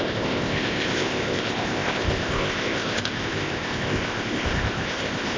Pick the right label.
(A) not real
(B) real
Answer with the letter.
A